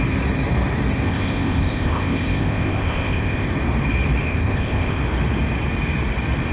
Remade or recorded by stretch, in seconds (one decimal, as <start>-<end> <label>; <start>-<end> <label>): 0.0-1.0 recorded; 1.0-3.5 remade; 3.5-4.2 recorded; 4.2-5.0 remade; 5.0-6.5 recorded